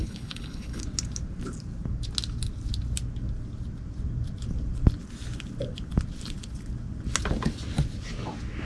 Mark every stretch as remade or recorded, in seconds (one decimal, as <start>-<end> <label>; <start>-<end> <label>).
0.0-0.8 remade; 0.8-8.7 recorded